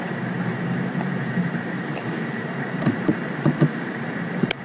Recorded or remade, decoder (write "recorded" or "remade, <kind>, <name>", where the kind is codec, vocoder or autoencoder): remade, vocoder, BigVGAN v2